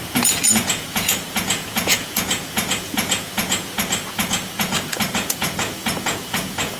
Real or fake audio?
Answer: fake